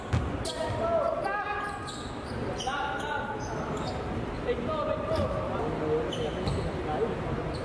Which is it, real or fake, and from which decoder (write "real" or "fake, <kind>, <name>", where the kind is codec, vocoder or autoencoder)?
real